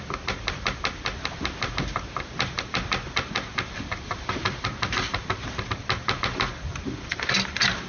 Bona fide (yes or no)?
no